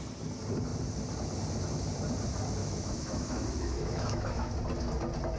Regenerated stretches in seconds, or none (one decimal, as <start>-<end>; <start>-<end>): 2.6-4.6

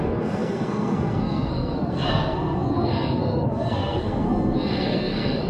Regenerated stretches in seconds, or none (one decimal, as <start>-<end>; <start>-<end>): 0.0-5.5

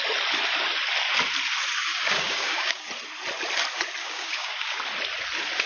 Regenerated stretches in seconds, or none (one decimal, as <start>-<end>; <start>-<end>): 1.8-2.9; 4.0-4.8

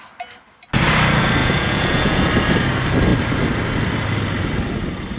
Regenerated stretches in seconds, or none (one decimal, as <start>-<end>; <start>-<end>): 1.4-2.3

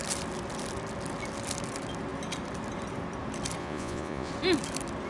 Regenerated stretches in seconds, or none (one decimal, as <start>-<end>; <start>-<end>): 3.6-4.3

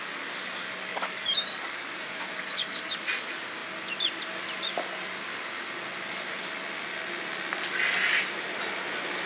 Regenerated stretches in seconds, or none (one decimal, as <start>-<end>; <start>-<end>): 0.9-2.9

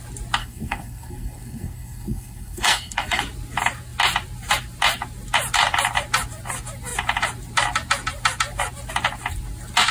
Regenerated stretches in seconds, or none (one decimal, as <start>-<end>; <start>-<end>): 0.4-3.2